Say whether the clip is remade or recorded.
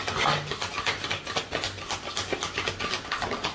recorded